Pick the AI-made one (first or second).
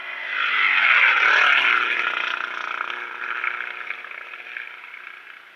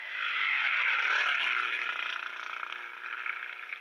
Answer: second